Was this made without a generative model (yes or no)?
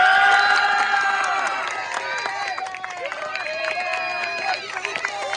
yes